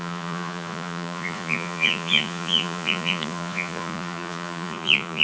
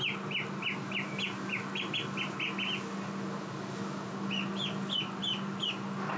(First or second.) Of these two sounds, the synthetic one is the first